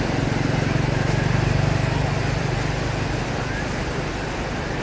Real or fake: real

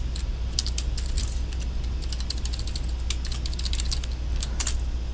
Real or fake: real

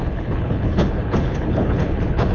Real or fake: fake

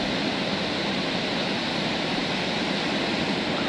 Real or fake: real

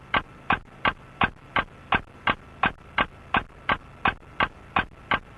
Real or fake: real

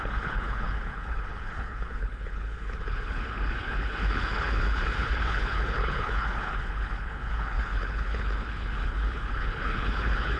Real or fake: fake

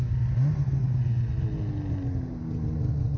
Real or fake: real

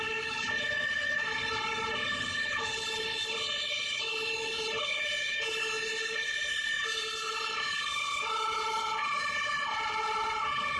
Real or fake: fake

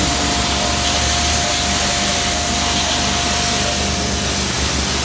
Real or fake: real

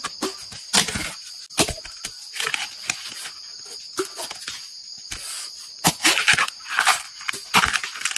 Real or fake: real